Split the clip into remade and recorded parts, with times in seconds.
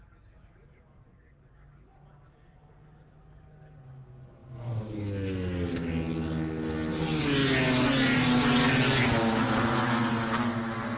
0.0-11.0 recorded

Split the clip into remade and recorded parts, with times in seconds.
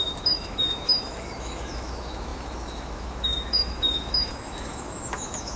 0.0-5.6 remade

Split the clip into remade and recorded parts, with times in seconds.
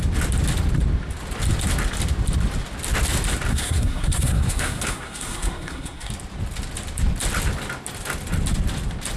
0.0-3.5 recorded; 3.5-6.1 remade; 6.1-9.2 recorded